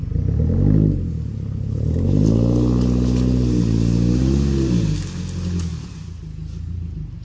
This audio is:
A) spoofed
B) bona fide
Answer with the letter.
B